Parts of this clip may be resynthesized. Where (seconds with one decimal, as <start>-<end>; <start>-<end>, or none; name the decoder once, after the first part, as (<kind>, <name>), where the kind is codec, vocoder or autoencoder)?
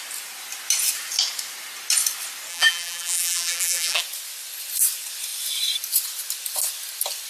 2.5-4.0 (vocoder, BigVGAN v2)